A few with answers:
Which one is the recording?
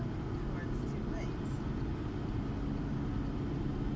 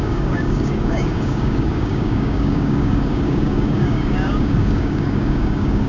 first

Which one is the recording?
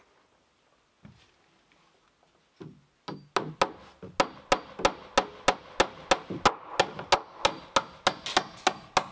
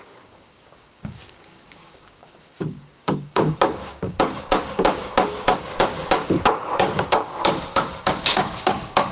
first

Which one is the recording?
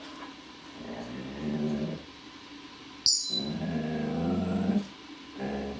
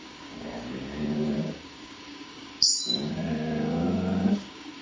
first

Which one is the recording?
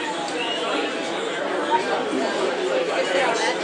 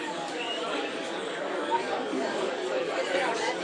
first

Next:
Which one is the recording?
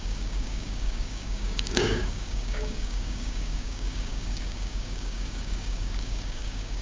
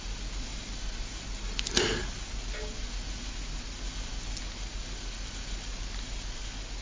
second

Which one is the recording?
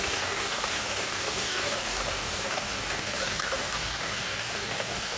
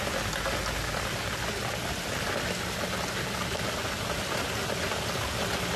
second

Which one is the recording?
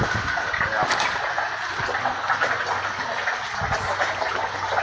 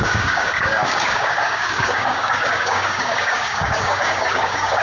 first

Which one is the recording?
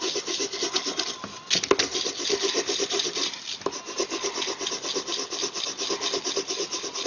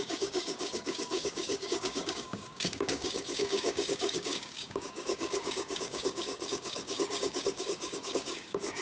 first